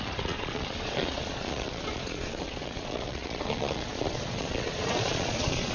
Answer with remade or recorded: remade